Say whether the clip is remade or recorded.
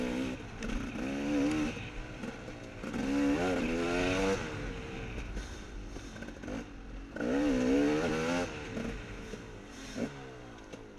recorded